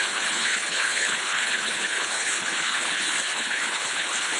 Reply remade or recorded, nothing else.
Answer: remade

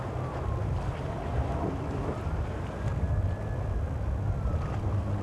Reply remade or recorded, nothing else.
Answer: recorded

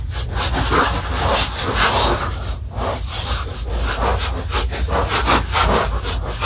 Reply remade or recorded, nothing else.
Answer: recorded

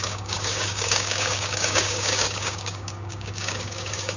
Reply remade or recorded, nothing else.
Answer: remade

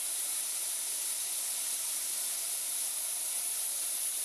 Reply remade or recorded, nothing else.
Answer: recorded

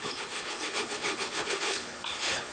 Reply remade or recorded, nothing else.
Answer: remade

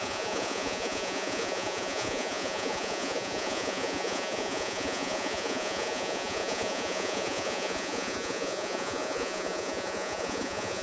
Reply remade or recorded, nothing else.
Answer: remade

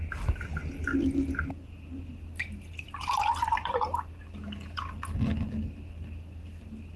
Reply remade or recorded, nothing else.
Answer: remade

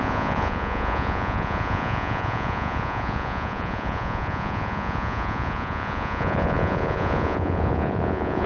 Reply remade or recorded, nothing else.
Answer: remade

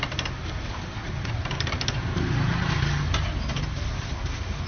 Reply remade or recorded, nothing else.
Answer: recorded